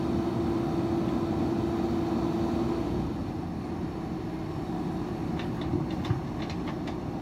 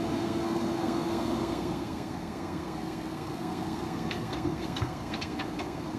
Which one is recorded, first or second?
first